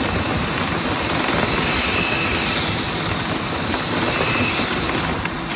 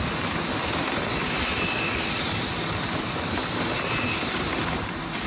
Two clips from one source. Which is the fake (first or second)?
second